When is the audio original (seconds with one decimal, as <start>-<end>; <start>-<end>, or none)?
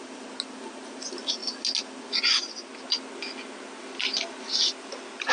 0.0-5.3